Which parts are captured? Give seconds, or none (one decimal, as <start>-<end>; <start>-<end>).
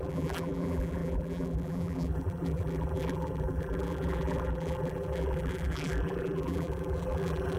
none